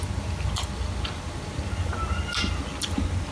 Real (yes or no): yes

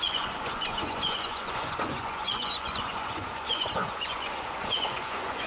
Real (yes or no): no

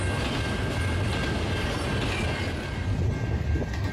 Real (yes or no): yes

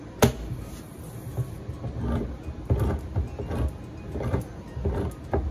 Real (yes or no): yes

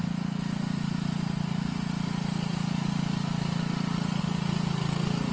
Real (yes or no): yes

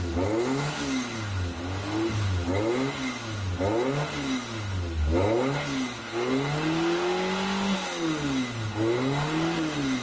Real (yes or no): yes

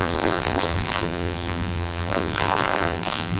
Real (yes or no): no